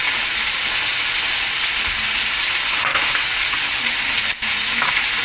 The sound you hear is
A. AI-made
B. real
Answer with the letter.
B